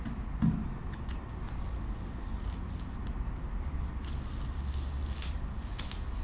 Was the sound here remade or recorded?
recorded